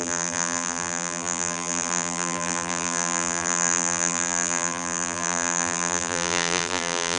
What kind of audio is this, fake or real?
fake